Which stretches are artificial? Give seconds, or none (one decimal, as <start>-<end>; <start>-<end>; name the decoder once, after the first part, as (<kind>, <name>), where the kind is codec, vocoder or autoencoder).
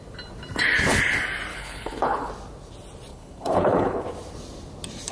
1.5-2.3 (codec, HILCodec); 3.1-4.0